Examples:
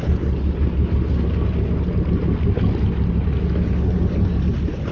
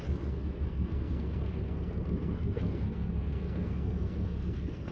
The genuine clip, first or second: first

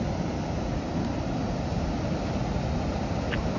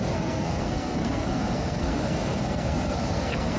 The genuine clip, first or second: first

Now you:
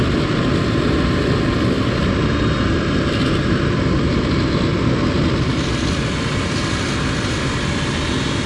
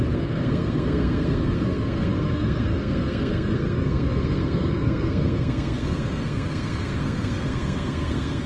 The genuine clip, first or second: first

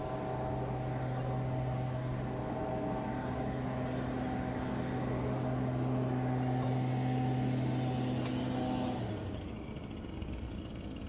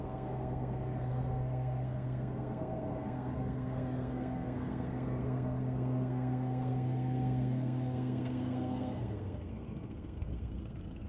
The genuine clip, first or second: first